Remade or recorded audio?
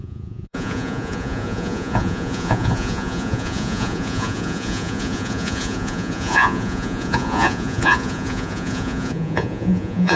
remade